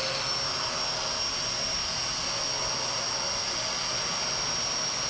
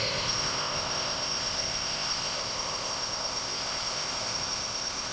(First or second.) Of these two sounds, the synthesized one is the second